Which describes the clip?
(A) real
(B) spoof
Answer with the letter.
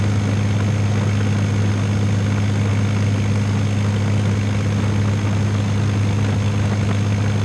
A